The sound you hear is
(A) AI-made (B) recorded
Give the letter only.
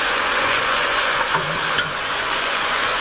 A